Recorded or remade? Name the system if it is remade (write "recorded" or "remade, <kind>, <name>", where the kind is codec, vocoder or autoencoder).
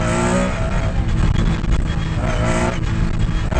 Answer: recorded